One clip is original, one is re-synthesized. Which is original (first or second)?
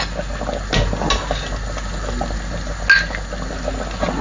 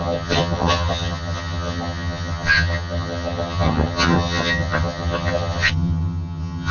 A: first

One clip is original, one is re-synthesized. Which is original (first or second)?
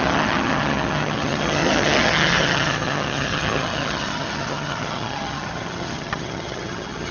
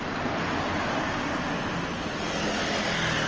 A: second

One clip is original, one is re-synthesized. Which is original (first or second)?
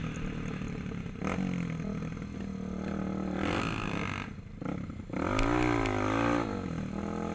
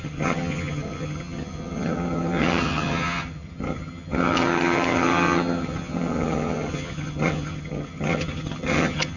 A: first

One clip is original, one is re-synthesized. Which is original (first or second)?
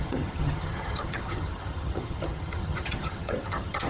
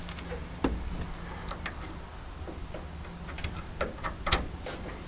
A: second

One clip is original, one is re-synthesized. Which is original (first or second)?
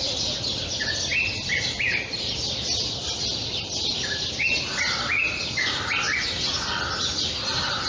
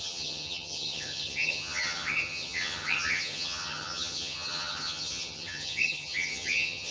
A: first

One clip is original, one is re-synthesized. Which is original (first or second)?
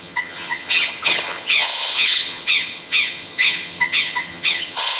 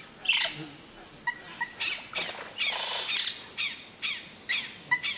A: second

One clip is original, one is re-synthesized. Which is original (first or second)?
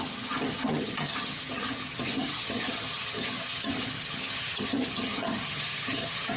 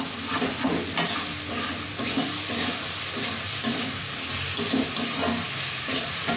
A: second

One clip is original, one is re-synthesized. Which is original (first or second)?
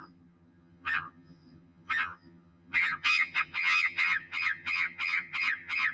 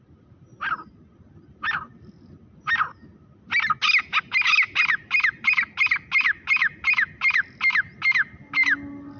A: second